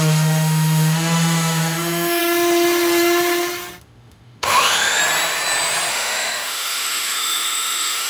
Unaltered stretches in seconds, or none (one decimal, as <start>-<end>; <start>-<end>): 2.2-3.8; 5.0-5.9